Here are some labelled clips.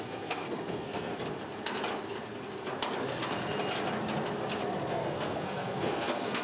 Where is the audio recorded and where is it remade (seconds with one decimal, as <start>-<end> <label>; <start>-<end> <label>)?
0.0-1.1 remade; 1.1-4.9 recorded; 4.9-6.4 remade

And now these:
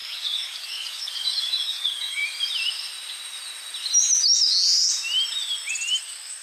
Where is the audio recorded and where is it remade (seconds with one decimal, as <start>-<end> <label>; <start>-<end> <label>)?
0.0-2.2 remade; 2.2-6.0 recorded; 6.0-6.4 remade

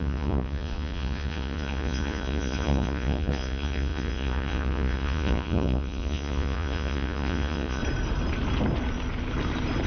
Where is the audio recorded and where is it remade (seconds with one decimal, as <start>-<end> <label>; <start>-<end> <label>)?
0.0-7.8 remade; 7.8-9.9 recorded

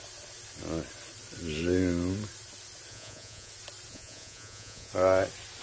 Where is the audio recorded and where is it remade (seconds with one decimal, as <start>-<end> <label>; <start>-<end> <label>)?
0.0-2.9 recorded; 2.9-3.5 remade; 3.5-3.9 recorded; 3.9-4.9 remade; 4.9-5.6 recorded